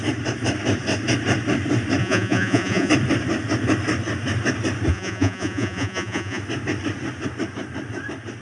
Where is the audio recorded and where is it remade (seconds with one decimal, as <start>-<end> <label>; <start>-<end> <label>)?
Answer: 0.0-2.0 recorded; 2.0-2.9 remade; 2.9-4.9 recorded; 4.9-6.4 remade; 6.4-8.4 recorded